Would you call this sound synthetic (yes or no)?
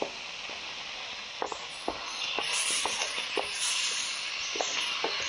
no